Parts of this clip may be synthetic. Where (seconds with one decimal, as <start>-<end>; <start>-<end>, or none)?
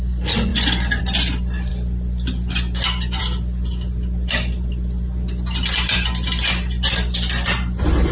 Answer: none